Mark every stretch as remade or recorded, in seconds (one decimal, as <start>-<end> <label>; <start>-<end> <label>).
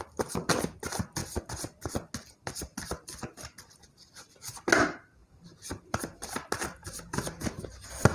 0.0-5.2 recorded; 5.2-6.0 remade; 6.0-6.8 recorded; 6.8-7.6 remade; 7.6-8.1 recorded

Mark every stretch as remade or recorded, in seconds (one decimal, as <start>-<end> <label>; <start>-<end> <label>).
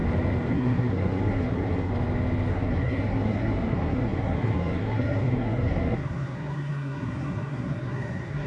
0.0-0.5 recorded; 0.5-1.9 remade; 1.9-2.5 recorded; 2.5-8.5 remade